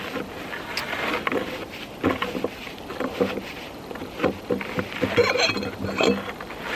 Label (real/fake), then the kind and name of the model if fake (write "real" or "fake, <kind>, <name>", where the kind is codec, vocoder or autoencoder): real